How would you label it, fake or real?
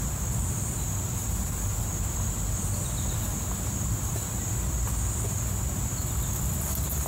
fake